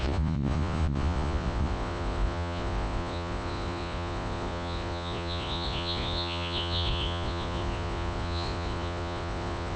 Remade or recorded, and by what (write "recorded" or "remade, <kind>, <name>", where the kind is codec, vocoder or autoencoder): remade, vocoder, Vocos